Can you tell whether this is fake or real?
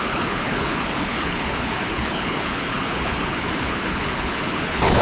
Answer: fake